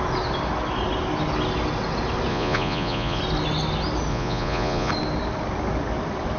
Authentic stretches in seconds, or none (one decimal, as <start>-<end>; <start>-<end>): 0.0-2.3; 3.2-4.1; 4.9-6.4